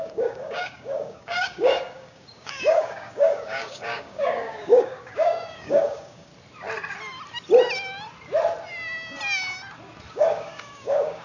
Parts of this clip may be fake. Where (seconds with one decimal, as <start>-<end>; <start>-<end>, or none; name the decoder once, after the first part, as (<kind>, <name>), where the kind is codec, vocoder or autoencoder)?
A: 0.0-6.3 (codec, DAC); 10.1-11.2